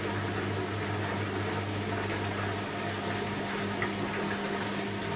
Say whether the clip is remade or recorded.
recorded